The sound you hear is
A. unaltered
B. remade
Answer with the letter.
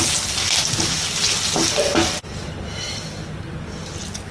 A